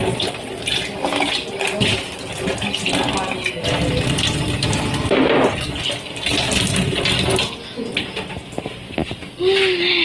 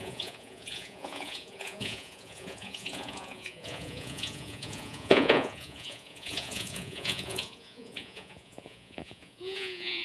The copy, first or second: second